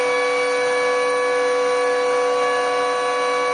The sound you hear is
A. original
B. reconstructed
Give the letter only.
A